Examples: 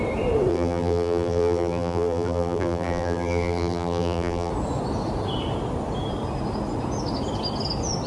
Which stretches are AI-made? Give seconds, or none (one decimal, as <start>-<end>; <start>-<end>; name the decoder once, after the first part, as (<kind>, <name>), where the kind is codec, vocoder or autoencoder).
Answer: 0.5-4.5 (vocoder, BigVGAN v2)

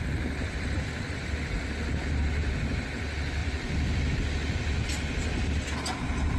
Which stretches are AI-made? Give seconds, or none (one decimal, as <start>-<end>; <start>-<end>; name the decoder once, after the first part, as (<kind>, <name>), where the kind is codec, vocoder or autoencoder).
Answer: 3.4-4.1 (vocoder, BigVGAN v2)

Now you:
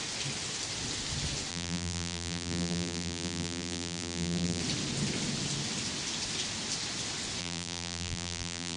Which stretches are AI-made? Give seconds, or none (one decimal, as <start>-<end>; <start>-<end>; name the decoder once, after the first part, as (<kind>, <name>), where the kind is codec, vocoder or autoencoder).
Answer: 1.5-4.6 (vocoder, BigVGAN v2); 7.4-8.8

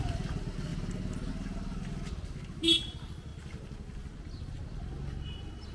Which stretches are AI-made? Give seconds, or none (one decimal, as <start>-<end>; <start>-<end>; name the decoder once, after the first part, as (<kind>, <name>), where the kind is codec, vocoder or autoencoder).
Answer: 3.3-4.2 (vocoder, BigVGAN v2)

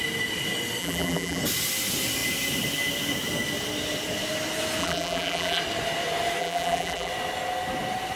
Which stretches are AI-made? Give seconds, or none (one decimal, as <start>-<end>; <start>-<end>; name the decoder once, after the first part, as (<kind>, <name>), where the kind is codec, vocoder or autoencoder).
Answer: 0.8-1.4 (vocoder, BigVGAN v2); 4.8-5.6; 6.4-7.1

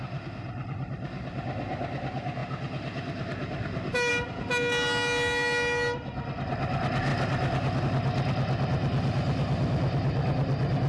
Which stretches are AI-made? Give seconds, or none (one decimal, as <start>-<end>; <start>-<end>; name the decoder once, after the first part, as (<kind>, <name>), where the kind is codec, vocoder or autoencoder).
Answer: none

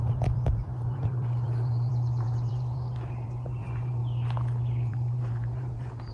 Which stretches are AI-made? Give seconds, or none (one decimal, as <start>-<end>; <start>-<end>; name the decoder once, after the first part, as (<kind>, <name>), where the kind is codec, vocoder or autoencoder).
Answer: 0.0-4.0 (vocoder, BigVGAN v2); 4.9-6.1

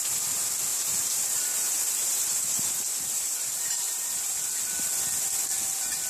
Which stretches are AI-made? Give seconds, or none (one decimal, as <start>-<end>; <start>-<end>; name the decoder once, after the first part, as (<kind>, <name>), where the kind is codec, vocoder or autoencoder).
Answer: 0.7-4.4 (vocoder, BigVGAN v2)